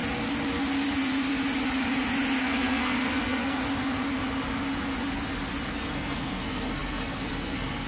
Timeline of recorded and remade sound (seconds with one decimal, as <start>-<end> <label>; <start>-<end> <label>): 0.0-2.4 recorded; 2.4-3.6 remade; 3.6-5.7 recorded; 5.7-7.9 remade